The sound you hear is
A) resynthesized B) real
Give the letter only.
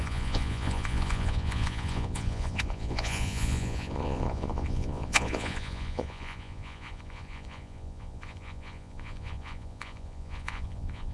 A